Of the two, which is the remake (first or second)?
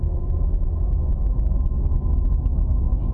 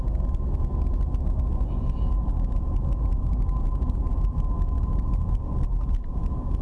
first